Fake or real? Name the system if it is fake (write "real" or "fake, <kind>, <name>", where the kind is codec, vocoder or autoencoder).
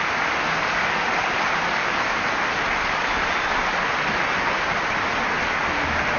real